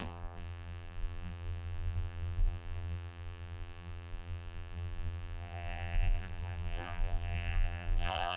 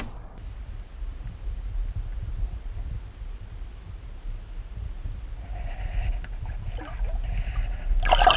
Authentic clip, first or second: second